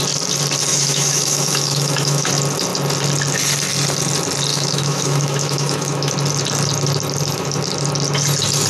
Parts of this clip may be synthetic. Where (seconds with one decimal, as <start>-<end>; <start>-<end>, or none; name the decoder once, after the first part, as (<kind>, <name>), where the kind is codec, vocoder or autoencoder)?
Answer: 0.7-2.3 (autoencoder, DAC-VAE); 4.5-6.1